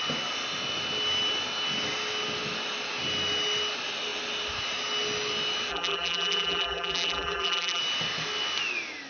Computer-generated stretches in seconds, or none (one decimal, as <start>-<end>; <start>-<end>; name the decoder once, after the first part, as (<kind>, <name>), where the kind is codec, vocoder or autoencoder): 5.7-7.8 (vocoder, BigVGAN v2)